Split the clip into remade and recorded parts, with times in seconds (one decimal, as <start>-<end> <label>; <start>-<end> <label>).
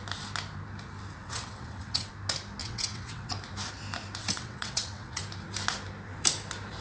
0.0-1.2 recorded; 1.2-2.1 remade; 2.1-2.6 recorded; 2.6-3.3 remade; 3.3-4.2 recorded; 4.2-5.2 remade; 5.2-6.8 recorded